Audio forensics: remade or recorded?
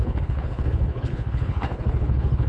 remade